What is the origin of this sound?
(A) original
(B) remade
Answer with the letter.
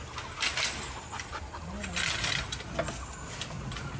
A